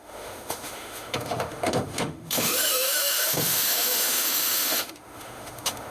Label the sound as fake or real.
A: fake